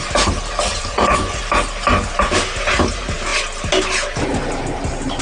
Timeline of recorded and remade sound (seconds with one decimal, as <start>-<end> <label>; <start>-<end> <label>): 0.0-0.7 recorded; 0.7-1.4 remade; 1.4-5.2 recorded